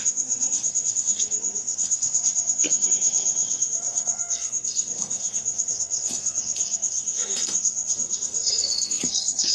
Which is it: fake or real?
fake